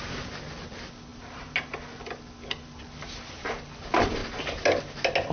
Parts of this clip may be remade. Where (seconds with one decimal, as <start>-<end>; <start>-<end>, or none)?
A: none